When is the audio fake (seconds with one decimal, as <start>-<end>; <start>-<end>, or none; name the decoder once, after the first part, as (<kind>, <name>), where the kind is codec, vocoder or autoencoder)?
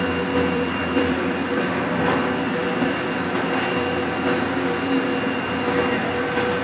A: 0.0-5.1 (vocoder, BigVGAN v2)